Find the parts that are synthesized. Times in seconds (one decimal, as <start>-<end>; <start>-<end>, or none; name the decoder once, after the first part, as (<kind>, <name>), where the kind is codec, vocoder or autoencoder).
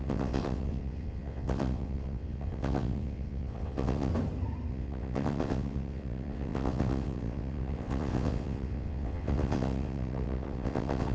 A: 0.0-4.1 (vocoder, WaveNeXt); 4.7-11.1